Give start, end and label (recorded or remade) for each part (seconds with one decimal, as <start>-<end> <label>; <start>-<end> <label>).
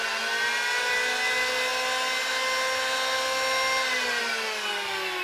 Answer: 0.0-5.2 recorded